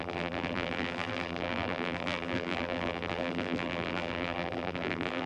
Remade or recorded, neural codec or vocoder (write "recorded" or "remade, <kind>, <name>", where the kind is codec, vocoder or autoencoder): remade, vocoder, BigVGAN v2